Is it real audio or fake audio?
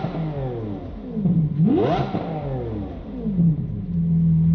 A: real